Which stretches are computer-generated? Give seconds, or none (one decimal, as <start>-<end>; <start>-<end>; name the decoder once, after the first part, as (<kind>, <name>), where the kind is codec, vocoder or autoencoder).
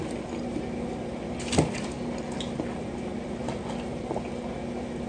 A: none